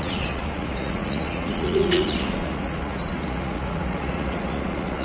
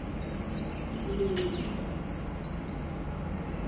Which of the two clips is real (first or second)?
second